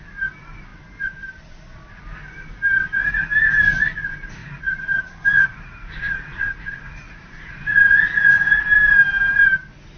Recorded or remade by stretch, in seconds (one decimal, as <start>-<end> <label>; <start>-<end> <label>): 0.0-4.4 recorded; 4.4-8.6 remade; 8.6-10.0 recorded